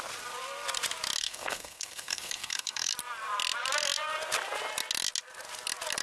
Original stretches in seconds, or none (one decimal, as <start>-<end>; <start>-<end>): 0.0-1.2; 2.9-6.0